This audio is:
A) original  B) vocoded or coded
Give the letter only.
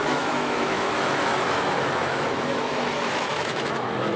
B